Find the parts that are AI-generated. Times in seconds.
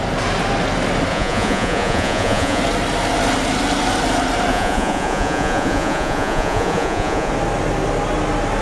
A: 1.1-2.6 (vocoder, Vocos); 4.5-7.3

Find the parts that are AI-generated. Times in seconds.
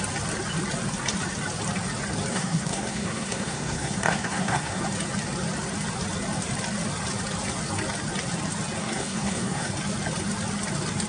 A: 2.3-4.8 (codec, SNAC); 8.8-9.7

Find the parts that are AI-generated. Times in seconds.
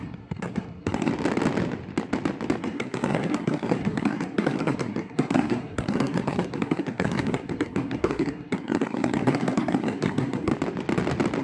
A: 0.0-1.1 (codec, SNAC); 2.6-10.5